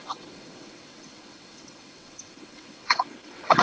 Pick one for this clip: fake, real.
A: fake